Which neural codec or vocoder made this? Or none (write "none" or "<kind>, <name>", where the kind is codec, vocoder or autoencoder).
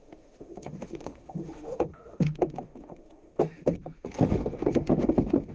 autoencoder, DAC-VAE